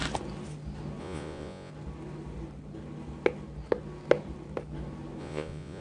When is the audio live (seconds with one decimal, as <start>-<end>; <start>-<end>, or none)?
0.0-1.0; 1.7-5.2